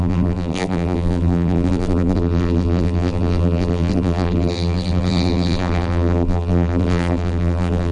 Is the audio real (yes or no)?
no